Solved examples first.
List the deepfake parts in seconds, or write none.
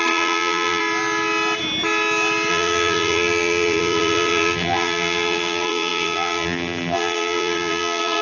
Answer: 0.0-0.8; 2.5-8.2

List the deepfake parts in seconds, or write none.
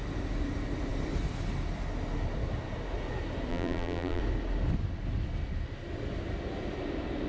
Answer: 3.5-4.2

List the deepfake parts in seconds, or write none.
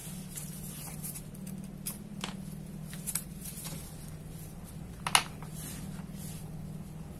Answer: none